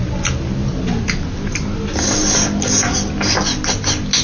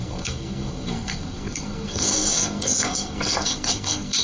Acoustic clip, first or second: first